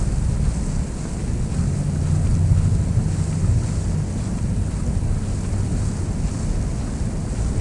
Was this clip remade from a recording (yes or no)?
no